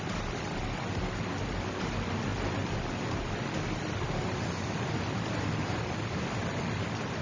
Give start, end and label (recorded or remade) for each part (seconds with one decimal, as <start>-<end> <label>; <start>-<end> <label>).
0.0-7.2 recorded